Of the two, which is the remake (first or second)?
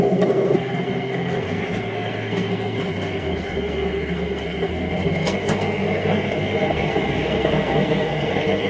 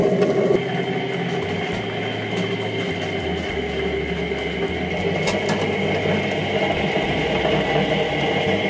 first